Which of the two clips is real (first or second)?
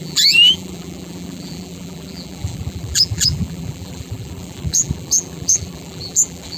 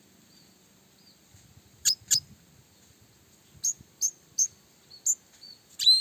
second